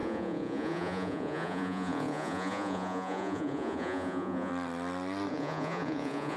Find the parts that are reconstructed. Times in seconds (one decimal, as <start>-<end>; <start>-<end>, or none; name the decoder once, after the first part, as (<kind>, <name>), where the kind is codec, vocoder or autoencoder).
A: 0.0-4.5 (vocoder, Vocos); 5.3-6.4